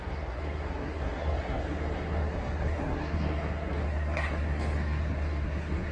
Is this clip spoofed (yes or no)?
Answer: yes